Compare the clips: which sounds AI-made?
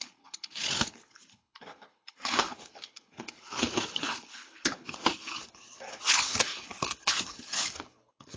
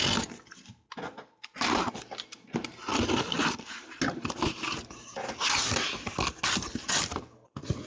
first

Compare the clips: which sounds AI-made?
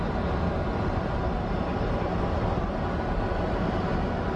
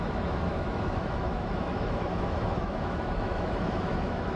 second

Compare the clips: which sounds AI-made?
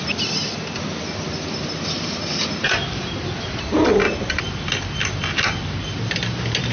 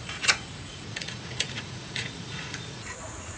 second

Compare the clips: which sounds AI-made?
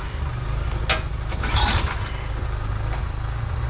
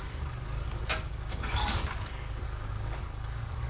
second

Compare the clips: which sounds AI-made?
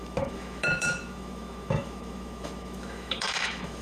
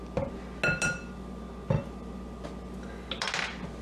first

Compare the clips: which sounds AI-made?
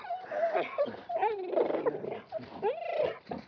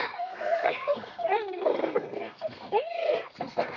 second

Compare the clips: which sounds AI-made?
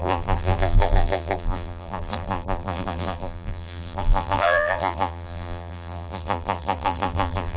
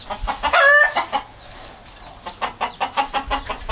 first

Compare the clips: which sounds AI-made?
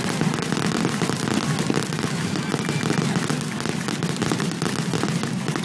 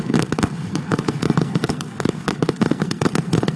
second